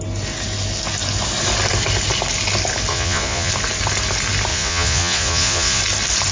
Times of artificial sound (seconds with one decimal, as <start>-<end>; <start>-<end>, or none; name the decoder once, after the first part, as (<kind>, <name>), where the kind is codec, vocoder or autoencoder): 2.9-3.5 (vocoder, Vocos); 4.5-5.8